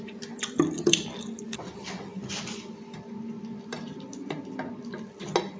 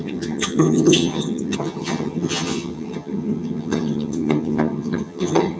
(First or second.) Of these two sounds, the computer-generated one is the second